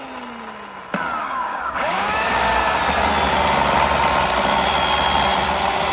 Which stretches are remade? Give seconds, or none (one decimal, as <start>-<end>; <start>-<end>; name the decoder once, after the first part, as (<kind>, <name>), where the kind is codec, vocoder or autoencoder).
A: 1.2-2.8 (codec, DAC)

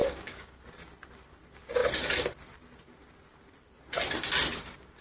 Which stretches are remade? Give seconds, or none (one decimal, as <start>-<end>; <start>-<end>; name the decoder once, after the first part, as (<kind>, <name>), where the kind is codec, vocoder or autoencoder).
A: 0.0-0.6 (codec, DAC)

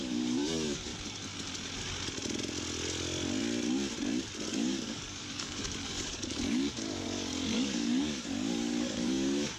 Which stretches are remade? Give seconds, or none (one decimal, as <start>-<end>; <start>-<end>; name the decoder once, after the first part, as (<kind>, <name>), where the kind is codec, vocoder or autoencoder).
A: 0.0-0.9 (codec, DAC); 4.5-9.6

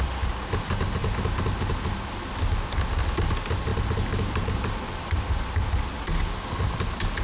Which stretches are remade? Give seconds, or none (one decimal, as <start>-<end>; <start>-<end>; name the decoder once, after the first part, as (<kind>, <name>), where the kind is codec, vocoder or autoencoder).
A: none

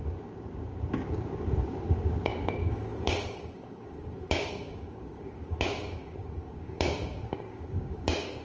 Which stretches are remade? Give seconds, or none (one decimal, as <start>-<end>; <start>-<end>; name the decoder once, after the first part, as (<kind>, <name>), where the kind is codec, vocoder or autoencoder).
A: 0.0-8.4 (codec, DAC)